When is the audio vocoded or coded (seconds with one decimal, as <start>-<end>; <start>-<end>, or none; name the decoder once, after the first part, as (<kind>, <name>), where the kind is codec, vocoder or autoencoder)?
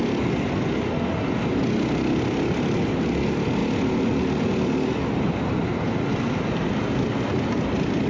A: none